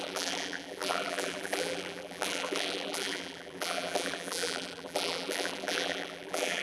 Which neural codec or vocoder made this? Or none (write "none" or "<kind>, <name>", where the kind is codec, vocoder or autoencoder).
vocoder, BigVGAN v2